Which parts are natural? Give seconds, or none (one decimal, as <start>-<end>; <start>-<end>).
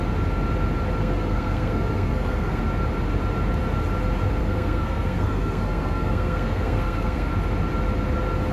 0.0-1.0; 2.6-4.4; 7.3-8.5